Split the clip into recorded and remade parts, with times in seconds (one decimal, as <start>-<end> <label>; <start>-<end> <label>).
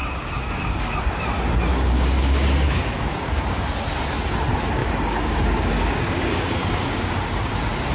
0.0-1.2 remade; 1.2-1.7 recorded; 1.7-3.7 remade; 3.7-4.8 recorded; 4.8-7.1 remade; 7.1-7.9 recorded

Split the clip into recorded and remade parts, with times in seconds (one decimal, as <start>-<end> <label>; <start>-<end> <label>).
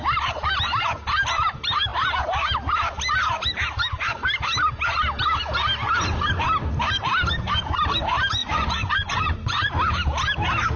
0.0-8.4 recorded; 8.4-9.7 remade; 9.7-10.8 recorded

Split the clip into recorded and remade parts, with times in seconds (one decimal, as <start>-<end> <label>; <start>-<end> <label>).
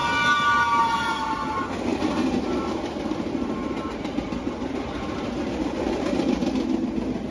0.0-7.3 recorded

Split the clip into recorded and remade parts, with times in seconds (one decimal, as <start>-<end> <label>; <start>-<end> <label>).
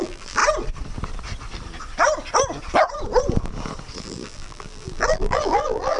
0.0-0.4 remade; 0.4-4.0 recorded; 4.0-6.0 remade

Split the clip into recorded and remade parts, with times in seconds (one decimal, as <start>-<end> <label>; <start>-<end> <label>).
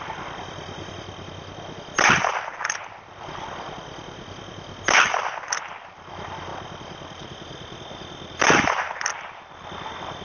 0.0-10.2 recorded